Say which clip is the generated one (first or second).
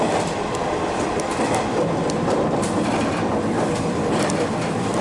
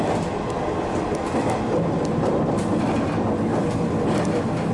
first